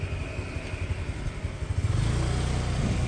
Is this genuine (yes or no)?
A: yes